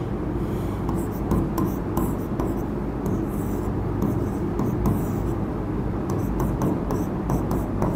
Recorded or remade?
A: recorded